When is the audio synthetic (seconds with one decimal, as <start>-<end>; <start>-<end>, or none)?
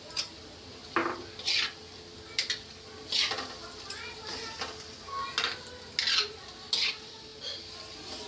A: none